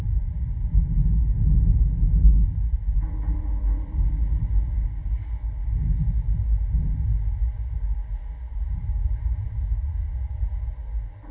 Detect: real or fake real